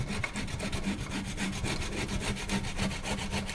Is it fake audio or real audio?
real